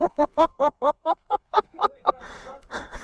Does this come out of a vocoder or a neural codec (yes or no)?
yes